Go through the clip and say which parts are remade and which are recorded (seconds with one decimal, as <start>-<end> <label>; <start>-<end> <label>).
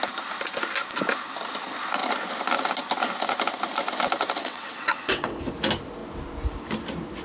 0.0-4.4 recorded; 4.4-5.5 remade; 5.5-7.2 recorded